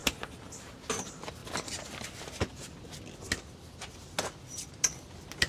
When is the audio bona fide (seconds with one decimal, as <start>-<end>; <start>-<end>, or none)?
0.0-5.5